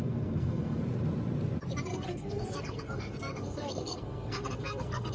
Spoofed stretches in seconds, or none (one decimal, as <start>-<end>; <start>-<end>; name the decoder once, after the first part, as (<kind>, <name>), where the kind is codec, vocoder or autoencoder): 0.0-0.8 (codec, SNAC); 1.9-5.1